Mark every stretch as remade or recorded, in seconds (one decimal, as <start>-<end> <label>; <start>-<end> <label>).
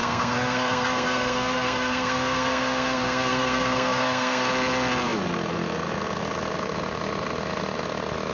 0.0-4.5 remade; 4.5-8.3 recorded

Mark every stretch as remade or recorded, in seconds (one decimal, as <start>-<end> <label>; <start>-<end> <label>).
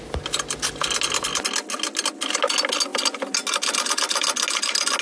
0.0-5.0 recorded